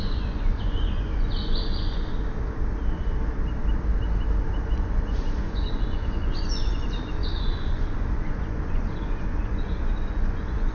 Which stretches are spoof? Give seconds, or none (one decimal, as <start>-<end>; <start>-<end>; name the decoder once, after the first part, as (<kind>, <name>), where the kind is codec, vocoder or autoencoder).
0.0-2.1 (vocoder, Vocos); 4.6-10.7